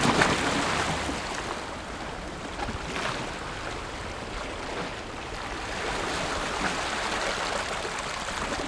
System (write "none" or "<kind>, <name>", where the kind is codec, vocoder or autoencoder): none